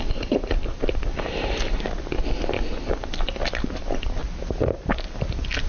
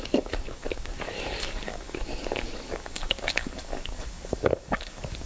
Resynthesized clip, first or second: second